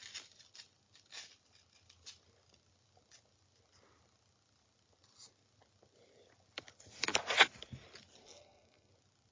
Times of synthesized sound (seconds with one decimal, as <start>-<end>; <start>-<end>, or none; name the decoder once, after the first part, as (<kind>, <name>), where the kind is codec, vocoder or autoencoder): 8.2-8.9 (codec, SNAC)